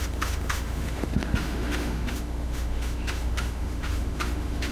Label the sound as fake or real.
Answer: fake